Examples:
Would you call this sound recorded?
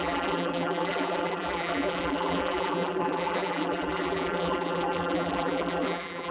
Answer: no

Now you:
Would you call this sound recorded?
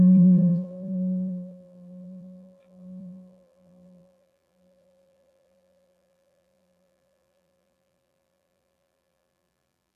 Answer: no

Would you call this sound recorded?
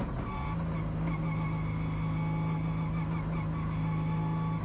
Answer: yes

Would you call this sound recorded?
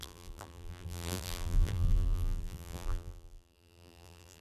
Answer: no